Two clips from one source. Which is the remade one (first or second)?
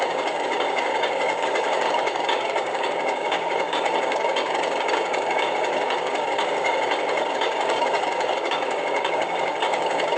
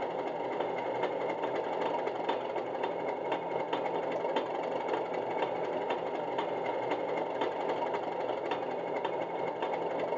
first